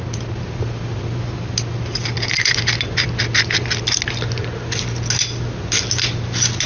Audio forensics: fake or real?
real